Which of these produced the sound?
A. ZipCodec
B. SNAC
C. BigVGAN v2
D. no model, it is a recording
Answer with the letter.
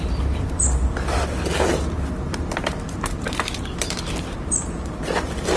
C